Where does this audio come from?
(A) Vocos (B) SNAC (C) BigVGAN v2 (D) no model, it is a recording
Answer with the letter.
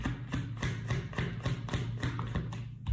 D